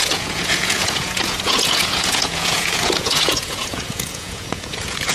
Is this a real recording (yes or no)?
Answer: no